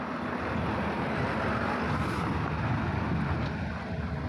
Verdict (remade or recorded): recorded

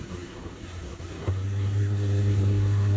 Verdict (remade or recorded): remade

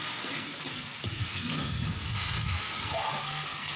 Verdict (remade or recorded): remade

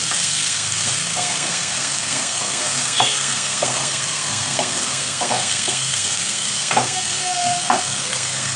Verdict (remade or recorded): remade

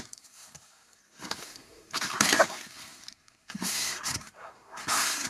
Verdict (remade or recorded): remade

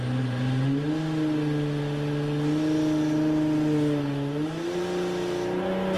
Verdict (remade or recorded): recorded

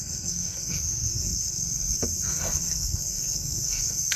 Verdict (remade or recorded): remade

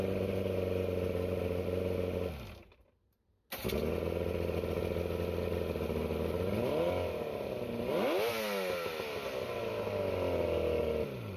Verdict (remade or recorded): recorded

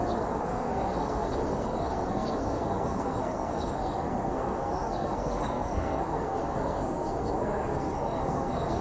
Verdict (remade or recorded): remade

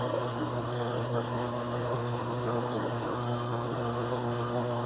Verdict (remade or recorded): remade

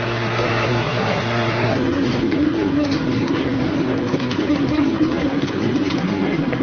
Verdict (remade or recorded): remade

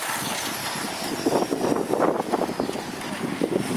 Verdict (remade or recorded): recorded